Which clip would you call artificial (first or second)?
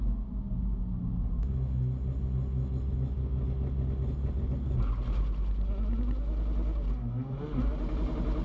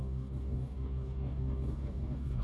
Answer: second